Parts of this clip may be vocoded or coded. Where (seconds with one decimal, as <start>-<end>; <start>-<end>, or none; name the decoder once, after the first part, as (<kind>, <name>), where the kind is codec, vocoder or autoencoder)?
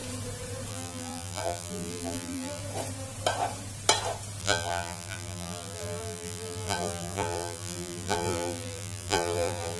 0.7-2.6 (vocoder, BigVGAN v2); 4.4-9.8